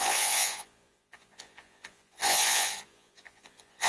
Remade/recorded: remade